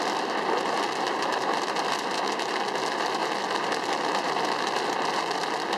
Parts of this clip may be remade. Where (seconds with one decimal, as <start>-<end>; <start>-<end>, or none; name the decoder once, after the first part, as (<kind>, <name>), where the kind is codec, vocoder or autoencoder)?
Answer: none

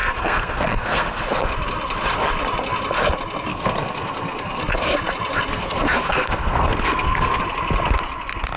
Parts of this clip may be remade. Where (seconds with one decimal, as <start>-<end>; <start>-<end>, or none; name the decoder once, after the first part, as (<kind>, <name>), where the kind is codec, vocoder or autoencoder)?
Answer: 0.0-1.2 (codec, SNAC); 3.5-4.6; 5.5-7.4

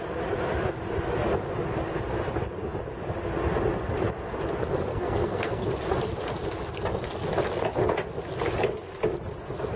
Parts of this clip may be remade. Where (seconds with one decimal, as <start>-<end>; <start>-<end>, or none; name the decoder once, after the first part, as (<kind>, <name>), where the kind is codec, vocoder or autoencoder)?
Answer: 4.9-5.7 (codec, SNAC)

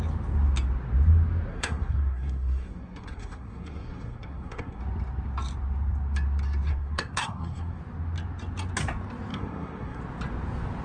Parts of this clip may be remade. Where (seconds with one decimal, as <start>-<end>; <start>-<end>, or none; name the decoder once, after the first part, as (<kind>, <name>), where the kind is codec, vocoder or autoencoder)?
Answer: 1.5-4.8 (codec, SNAC); 6.7-7.8; 9.3-10.0

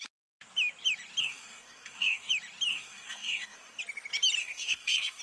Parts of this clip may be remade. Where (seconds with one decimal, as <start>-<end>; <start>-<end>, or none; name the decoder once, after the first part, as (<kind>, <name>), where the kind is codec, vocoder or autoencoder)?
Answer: 1.2-2.3 (codec, SNAC); 2.7-3.8; 4.4-5.2

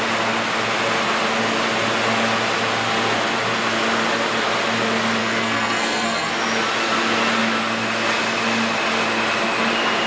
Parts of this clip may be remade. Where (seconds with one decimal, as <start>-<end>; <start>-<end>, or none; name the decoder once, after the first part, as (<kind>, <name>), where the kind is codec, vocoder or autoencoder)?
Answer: 5.2-6.3 (codec, SNAC)

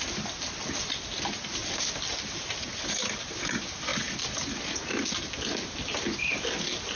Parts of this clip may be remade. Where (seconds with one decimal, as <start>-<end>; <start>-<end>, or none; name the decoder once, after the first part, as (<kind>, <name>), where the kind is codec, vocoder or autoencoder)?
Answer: none